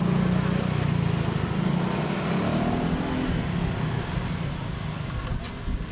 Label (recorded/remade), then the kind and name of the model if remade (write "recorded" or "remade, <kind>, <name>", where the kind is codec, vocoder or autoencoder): recorded